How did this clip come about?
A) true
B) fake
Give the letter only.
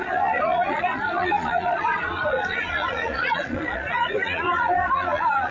B